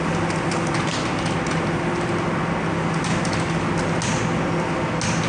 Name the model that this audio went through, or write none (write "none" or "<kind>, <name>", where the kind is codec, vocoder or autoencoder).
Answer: none